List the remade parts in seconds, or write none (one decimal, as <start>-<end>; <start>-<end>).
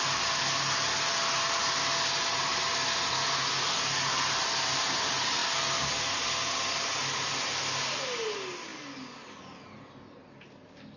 none